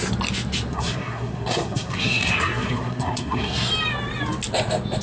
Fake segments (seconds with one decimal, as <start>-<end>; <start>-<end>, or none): 0.7-3.7

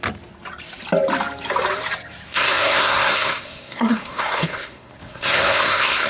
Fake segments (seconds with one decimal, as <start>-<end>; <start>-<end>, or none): 2.3-6.1

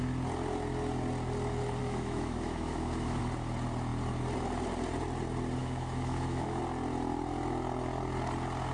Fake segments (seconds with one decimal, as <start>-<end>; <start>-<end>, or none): 1.8-3.2; 5.6-6.6

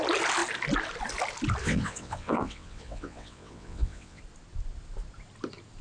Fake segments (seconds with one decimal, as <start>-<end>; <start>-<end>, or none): 1.6-4.2